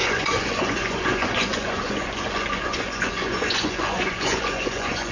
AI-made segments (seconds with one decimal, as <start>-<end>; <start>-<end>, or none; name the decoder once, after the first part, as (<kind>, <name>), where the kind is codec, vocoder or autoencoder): 0.0-5.1 (vocoder, Vocos)